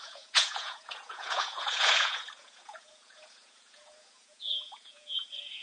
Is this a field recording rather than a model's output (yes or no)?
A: no